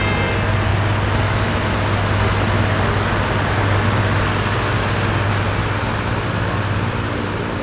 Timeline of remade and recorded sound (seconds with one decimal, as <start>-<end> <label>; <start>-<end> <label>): 0.0-7.6 recorded

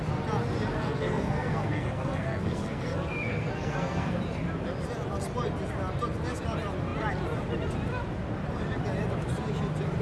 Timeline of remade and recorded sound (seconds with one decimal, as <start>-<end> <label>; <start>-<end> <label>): 0.0-0.7 recorded; 0.7-4.2 remade; 4.2-10.0 recorded

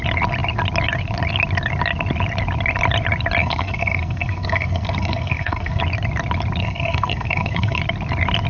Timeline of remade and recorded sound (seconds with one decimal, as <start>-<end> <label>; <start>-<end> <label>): 0.0-3.4 recorded; 3.4-5.8 remade; 5.8-6.6 recorded; 6.6-7.8 remade; 7.8-8.5 recorded

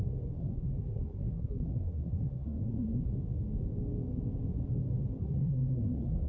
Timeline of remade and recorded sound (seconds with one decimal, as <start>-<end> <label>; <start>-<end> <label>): 0.0-0.4 recorded; 0.4-3.1 remade; 3.1-5.2 recorded; 5.2-6.3 remade

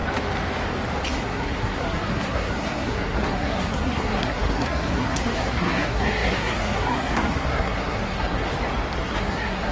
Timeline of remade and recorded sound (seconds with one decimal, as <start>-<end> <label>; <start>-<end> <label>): 0.0-1.1 recorded; 1.1-8.5 remade; 8.5-9.0 recorded; 9.0-9.7 remade